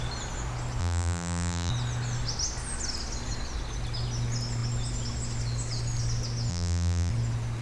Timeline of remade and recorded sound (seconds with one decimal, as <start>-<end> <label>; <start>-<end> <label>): 0.0-0.8 recorded; 0.8-1.7 remade; 1.7-6.5 recorded; 6.5-7.1 remade; 7.1-7.6 recorded